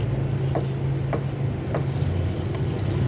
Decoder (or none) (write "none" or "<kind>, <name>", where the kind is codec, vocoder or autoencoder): none